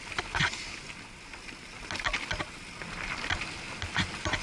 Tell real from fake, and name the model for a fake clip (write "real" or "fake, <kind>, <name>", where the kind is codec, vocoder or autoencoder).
real